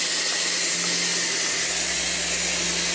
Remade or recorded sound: recorded